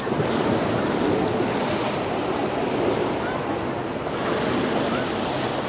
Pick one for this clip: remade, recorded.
recorded